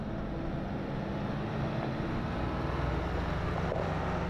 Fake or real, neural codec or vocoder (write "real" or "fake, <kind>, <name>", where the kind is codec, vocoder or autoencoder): real